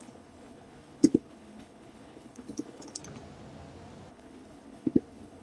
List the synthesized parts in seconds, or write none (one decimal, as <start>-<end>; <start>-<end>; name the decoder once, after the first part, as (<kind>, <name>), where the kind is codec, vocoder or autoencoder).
0.0-3.0 (codec, HILCodec); 4.1-5.4

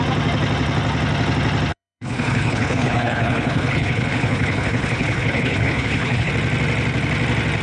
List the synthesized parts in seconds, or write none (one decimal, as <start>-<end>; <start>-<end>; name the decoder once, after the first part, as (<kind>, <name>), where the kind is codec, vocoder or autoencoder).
1.7-6.3 (codec, HILCodec)

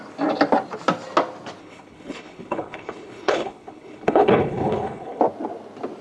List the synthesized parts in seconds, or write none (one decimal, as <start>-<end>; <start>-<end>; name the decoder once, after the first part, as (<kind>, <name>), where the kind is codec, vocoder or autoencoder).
1.6-5.2 (codec, HILCodec)

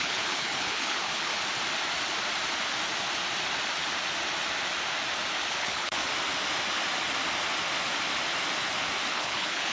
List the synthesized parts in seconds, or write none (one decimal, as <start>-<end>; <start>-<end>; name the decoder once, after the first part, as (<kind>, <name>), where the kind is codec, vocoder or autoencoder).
0.0-1.3 (codec, HILCodec); 5.5-6.1; 9.1-9.7

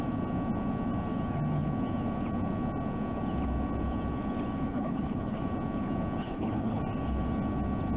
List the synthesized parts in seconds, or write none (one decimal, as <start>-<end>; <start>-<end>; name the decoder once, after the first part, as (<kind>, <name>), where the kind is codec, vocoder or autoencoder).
4.7-5.4 (codec, HILCodec); 6.2-6.8

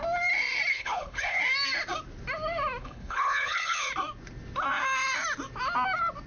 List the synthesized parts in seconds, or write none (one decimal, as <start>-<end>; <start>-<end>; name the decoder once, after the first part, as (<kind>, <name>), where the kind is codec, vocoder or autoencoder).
0.7-1.4 (codec, HILCodec); 2.8-3.9

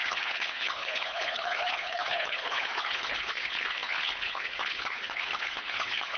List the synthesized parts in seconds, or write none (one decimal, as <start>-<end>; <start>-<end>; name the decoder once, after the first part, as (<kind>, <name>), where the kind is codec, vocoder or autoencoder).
0.0-6.2 (codec, HILCodec)